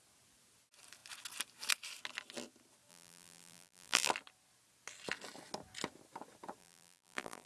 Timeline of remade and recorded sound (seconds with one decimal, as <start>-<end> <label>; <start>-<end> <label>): 0.0-2.9 recorded; 2.9-4.1 remade; 4.1-6.6 recorded; 6.6-7.5 remade